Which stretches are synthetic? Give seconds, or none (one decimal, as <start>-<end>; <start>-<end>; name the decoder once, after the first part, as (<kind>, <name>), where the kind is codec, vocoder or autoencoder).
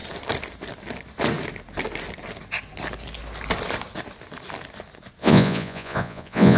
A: 5.2-6.6 (vocoder, Vocos)